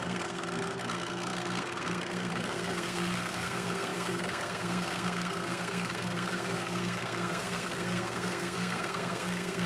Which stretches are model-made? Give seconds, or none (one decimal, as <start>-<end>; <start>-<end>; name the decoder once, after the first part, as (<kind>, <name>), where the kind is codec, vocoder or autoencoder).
0.0-9.7 (codec, SNAC)